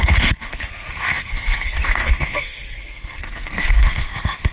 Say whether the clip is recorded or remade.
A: remade